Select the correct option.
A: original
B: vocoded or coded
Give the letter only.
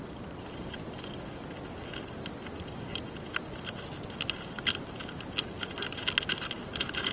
A